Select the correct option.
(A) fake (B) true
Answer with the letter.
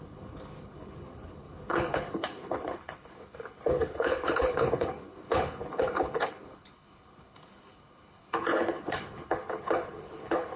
A